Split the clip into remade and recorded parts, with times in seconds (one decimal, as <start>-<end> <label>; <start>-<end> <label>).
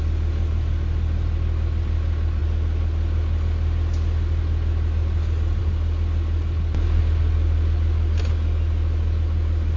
0.0-9.8 recorded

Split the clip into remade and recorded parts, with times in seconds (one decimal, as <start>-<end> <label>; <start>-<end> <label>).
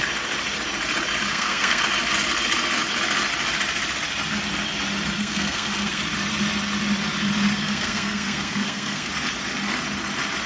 0.0-1.3 recorded; 1.3-1.8 remade; 1.8-5.2 recorded; 5.2-6.0 remade; 6.0-7.6 recorded; 7.6-9.1 remade; 9.1-10.5 recorded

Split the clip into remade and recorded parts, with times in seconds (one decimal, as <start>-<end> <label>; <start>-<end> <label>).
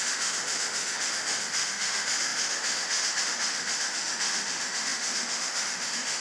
0.0-6.2 remade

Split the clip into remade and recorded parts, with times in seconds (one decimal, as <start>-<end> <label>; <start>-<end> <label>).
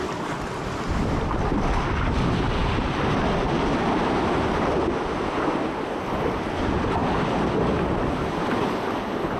0.0-9.4 recorded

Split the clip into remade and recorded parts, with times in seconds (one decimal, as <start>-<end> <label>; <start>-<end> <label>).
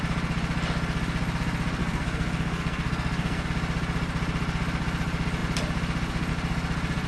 0.0-1.8 recorded; 1.8-3.5 remade; 3.5-7.1 recorded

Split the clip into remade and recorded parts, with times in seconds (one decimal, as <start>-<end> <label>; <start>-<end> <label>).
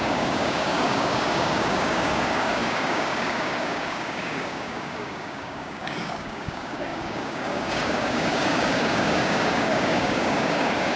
0.0-11.0 remade